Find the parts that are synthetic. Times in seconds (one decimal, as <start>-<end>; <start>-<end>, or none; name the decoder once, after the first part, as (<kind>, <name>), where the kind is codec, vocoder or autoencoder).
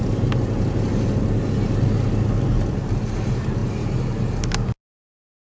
none